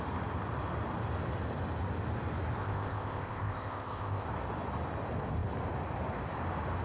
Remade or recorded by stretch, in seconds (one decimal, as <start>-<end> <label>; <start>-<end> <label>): 0.0-2.6 recorded; 2.6-4.3 remade; 4.3-6.8 recorded